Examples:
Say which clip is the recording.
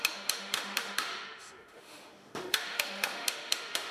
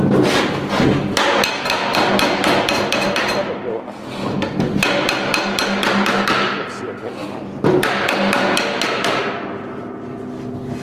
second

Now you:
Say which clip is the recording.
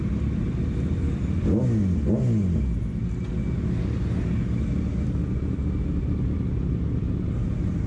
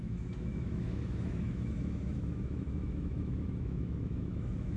first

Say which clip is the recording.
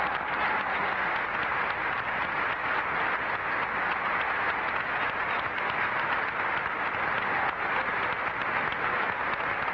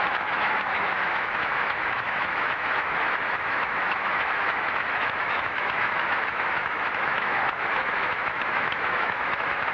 first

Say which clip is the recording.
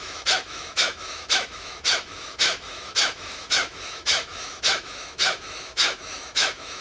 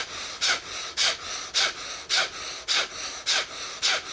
second